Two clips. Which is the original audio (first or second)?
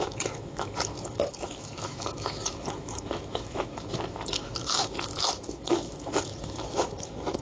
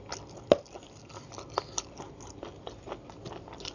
second